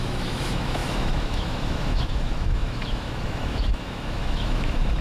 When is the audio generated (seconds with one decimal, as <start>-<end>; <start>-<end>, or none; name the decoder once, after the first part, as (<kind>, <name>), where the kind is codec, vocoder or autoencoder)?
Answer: 0.0-5.0 (autoencoder, DAC-VAE)